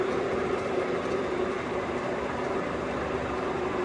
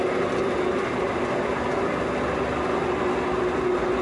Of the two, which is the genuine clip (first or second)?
second